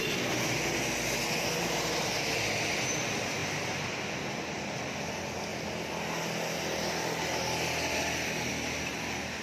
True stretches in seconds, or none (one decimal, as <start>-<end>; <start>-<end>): 0.0-9.4